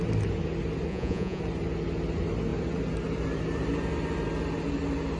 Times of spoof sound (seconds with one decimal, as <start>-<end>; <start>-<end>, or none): 0.9-1.4